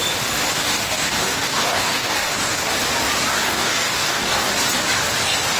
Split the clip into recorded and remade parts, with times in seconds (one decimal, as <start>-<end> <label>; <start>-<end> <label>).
0.0-0.5 recorded; 0.5-2.7 remade; 2.7-3.3 recorded; 3.3-4.5 remade; 4.5-5.6 recorded